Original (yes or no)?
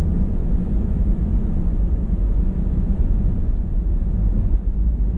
no